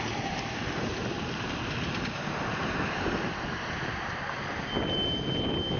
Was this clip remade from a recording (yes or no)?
no